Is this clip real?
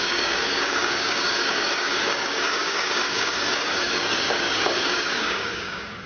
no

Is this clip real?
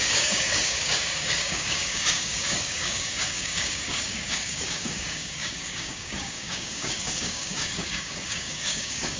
no